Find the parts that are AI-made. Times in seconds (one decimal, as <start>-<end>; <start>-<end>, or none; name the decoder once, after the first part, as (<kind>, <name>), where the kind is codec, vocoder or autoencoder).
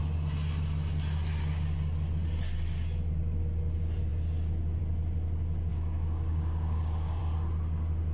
5.7-7.2 (codec, DAC)